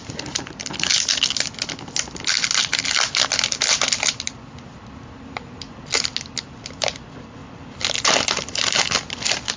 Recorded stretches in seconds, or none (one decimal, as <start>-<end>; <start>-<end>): 0.0-9.6